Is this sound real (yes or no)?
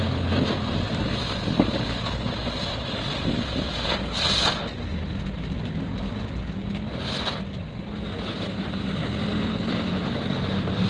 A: yes